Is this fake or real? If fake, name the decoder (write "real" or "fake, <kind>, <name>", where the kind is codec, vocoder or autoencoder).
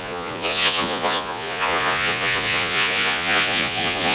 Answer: fake, vocoder, Vocos